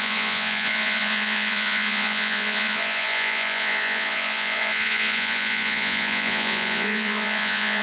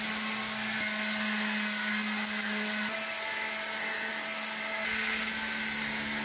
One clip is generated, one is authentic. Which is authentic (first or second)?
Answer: second